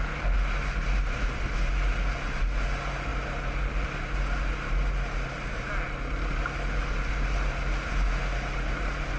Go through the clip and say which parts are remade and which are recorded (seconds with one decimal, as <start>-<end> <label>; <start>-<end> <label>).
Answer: 0.0-9.2 recorded